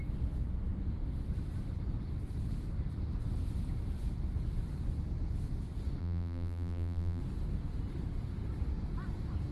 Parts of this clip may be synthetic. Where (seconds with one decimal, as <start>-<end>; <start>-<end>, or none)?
6.0-7.2